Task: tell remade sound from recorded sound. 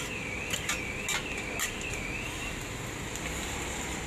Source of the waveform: recorded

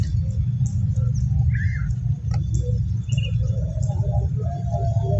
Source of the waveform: recorded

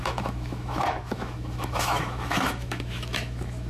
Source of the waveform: remade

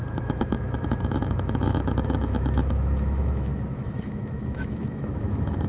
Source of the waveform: remade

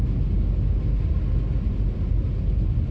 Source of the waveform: recorded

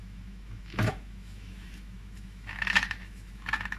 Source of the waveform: remade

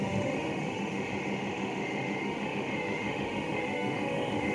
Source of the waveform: remade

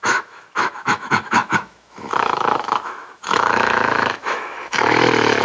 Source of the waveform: remade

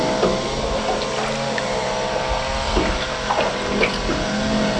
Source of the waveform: recorded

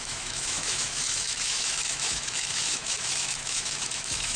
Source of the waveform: remade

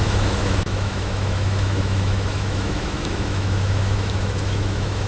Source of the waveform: remade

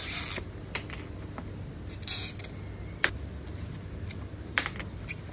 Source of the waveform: recorded